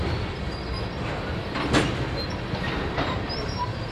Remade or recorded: recorded